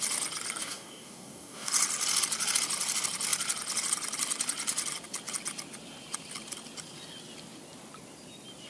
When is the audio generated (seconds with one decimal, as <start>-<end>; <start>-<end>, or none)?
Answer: 0.6-1.7